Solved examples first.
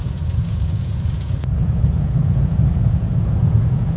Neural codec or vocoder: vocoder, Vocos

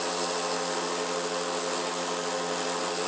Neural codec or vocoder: none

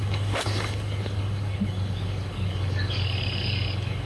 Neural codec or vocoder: codec, DAC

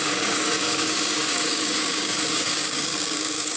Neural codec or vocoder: codec, DAC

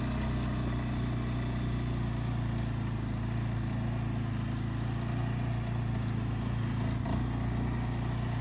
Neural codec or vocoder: none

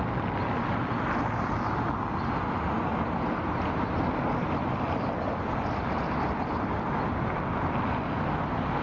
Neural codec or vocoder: none